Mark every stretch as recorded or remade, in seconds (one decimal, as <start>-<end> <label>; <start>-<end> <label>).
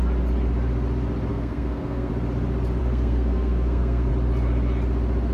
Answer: 0.0-1.3 recorded; 1.3-2.1 remade; 2.1-2.8 recorded; 2.8-4.1 remade; 4.1-5.3 recorded